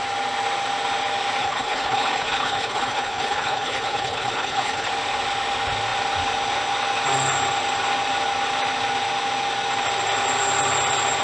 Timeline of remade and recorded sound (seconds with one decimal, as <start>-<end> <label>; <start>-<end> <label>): 0.0-1.4 recorded; 1.4-4.9 remade; 4.9-11.2 recorded